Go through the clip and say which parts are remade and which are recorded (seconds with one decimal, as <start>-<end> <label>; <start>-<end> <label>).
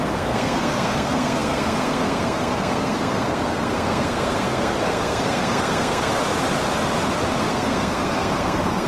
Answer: 0.0-6.2 remade; 6.2-7.4 recorded; 7.4-8.9 remade